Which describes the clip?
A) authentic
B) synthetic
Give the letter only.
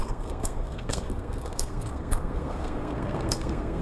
B